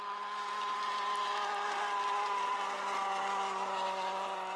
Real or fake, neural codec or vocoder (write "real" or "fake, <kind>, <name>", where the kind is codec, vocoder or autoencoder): real